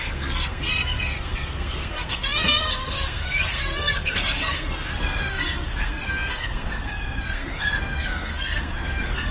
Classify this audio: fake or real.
fake